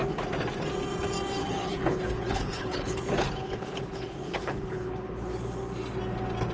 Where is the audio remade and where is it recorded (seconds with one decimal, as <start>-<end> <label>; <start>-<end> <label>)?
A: 0.0-1.4 recorded; 1.4-5.3 remade; 5.3-6.5 recorded